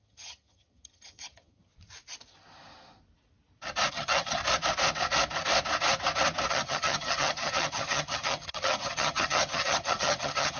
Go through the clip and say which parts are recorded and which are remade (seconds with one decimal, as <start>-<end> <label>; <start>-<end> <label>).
0.0-1.7 remade; 1.7-3.9 recorded; 3.9-4.4 remade; 4.4-6.5 recorded; 6.5-10.6 remade